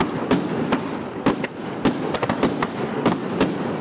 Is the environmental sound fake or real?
real